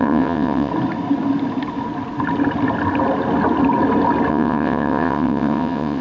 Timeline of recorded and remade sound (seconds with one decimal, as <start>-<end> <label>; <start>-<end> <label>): 0.0-0.7 remade; 0.7-4.3 recorded; 4.3-6.0 remade